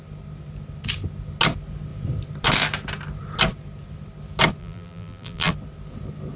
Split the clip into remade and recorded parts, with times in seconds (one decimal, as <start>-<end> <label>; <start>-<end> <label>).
0.0-4.6 recorded; 4.6-5.5 remade; 5.5-6.4 recorded